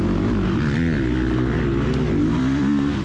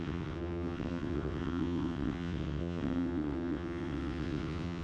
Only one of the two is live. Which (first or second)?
first